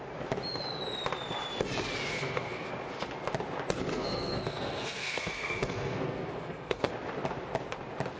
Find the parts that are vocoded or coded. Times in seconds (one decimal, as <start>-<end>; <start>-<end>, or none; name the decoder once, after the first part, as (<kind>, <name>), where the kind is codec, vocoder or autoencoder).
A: 2.1-2.7 (codec, SNAC); 3.9-6.9